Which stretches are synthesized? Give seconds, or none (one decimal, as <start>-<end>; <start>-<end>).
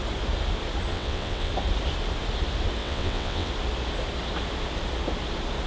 0.9-1.5; 2.8-3.5